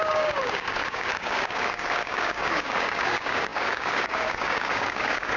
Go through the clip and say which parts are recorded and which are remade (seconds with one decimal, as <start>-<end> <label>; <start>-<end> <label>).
0.0-5.4 remade